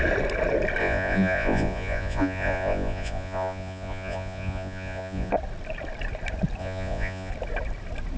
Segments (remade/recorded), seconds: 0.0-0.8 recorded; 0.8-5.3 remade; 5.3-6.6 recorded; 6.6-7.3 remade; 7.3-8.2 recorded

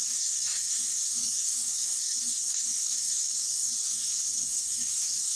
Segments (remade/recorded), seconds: 0.0-5.4 remade

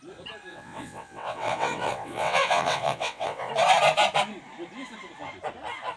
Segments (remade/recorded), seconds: 0.0-0.5 recorded; 0.5-3.5 remade; 3.5-6.0 recorded

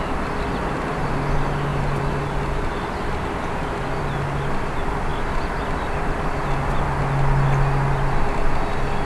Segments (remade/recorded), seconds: 0.0-9.1 recorded

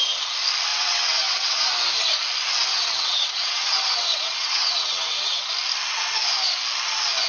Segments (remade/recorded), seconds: 0.0-0.7 recorded; 0.7-1.6 remade; 1.6-2.7 recorded; 2.7-5.5 remade; 5.5-7.3 recorded

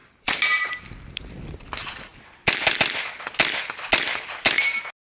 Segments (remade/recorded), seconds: 0.0-0.7 remade; 0.7-5.1 recorded

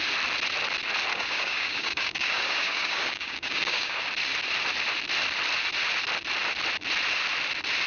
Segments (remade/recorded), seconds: 0.0-1.1 recorded; 1.1-4.0 remade; 4.0-7.9 recorded

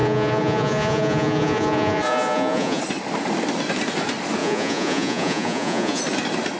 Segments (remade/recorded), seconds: 0.0-2.8 remade; 2.8-4.4 recorded; 4.4-6.0 remade; 6.0-6.6 recorded